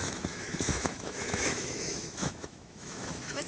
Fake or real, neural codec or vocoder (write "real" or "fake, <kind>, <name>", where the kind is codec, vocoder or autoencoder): fake, autoencoder, DAC-VAE